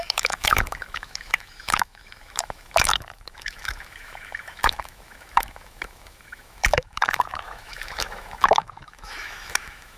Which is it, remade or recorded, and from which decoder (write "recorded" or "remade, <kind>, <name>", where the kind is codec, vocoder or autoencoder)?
remade, autoencoder, DAC-VAE